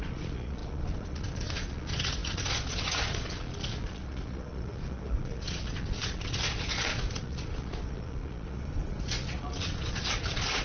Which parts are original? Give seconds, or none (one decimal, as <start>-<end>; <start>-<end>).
none